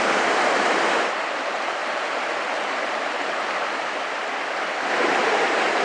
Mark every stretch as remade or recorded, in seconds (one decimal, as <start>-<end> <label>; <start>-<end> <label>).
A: 0.0-5.8 recorded